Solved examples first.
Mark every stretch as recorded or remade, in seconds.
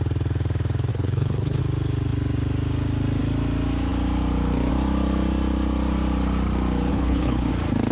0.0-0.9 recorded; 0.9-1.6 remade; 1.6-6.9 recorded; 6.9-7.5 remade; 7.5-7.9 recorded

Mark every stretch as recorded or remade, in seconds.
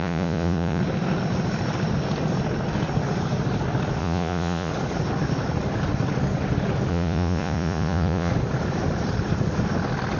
0.0-0.8 remade; 0.8-4.0 recorded; 4.0-4.7 remade; 4.7-6.9 recorded; 6.9-8.3 remade; 8.3-10.2 recorded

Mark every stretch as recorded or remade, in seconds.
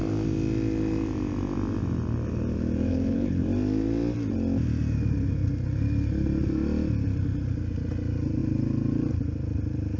0.0-2.9 recorded; 2.9-3.4 remade; 3.4-10.0 recorded